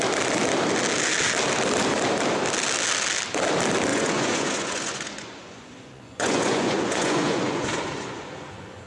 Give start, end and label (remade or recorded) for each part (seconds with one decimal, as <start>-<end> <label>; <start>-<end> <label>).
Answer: 0.0-3.9 recorded; 3.9-8.9 remade